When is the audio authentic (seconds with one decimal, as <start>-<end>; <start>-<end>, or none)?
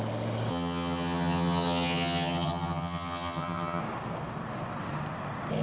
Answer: 0.0-0.5; 3.8-5.6